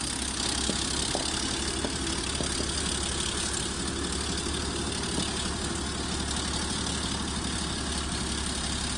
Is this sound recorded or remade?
recorded